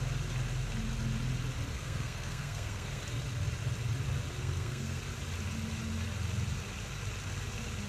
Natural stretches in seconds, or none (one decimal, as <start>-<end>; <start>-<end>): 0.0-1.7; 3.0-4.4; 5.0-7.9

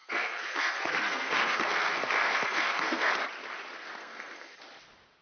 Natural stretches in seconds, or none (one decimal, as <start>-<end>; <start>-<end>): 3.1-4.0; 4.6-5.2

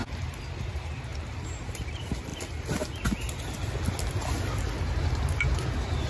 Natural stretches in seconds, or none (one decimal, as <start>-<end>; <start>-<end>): 0.0-0.6; 1.1-1.7; 2.3-5.1